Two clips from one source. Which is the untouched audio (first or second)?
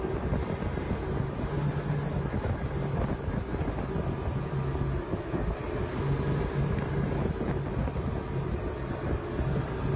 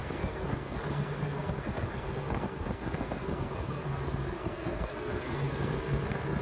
first